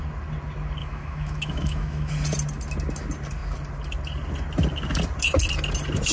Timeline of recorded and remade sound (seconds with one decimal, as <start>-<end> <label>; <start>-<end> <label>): 0.0-0.8 recorded; 0.8-2.1 remade; 2.1-6.1 recorded